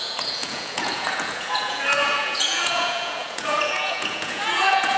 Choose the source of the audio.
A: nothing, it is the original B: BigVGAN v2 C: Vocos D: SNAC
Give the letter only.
C